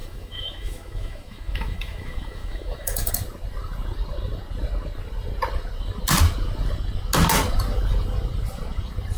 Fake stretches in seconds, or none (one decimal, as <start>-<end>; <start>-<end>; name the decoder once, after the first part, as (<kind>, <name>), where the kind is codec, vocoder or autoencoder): 0.0-3.1 (autoencoder, DAC-VAE)